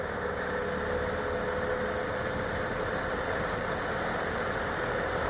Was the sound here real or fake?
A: real